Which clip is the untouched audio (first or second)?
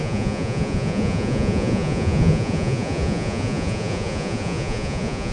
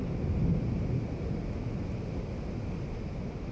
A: second